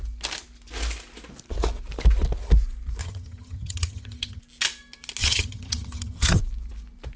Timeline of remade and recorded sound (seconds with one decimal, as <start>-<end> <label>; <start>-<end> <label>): 0.0-3.0 recorded; 3.0-4.4 remade; 4.4-5.2 recorded; 5.2-6.4 remade; 6.4-7.2 recorded